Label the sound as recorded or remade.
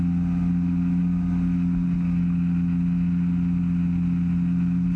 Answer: recorded